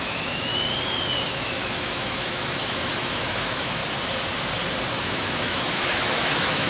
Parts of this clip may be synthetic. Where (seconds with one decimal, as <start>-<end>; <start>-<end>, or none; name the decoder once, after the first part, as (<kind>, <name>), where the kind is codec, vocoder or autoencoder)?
0.0-0.5 (autoencoder, DAC-VAE); 1.2-3.8; 5.0-6.7